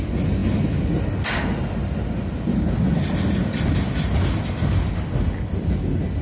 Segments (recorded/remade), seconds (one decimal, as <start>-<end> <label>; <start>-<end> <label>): 0.0-6.2 recorded